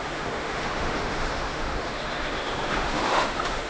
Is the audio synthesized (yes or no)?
yes